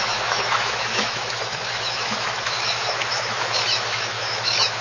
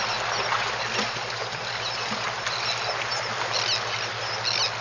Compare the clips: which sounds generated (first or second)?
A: first